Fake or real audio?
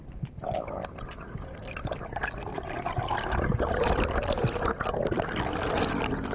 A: real